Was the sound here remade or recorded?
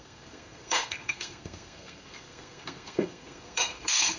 remade